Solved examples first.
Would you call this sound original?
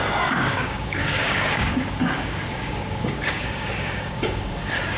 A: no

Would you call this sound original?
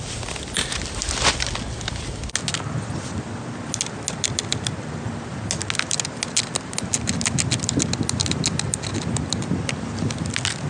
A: yes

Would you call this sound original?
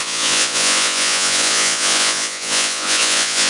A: no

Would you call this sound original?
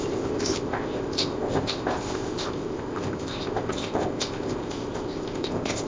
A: no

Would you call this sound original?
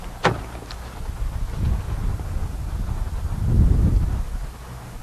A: yes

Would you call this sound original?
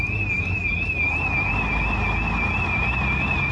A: yes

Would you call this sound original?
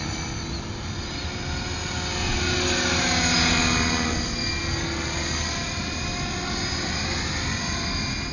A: yes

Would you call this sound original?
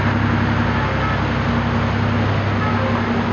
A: yes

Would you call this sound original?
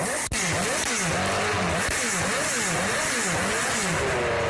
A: yes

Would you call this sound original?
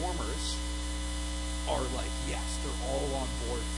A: yes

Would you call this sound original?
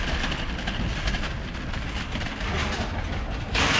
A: yes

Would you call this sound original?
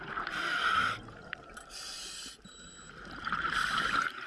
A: yes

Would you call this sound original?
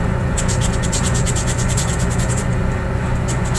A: no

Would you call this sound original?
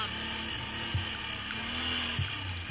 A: yes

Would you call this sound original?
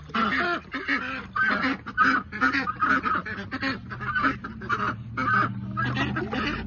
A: yes